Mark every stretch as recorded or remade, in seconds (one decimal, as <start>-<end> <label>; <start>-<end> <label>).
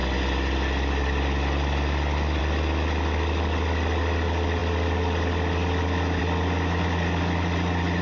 0.0-8.0 recorded